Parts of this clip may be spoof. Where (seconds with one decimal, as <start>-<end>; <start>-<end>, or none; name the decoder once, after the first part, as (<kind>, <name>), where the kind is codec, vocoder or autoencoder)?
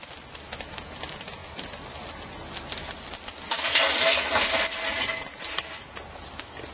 none